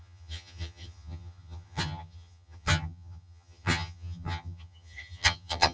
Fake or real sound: fake